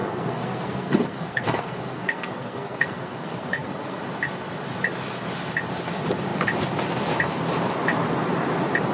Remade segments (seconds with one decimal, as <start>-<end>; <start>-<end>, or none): 0.0-4.0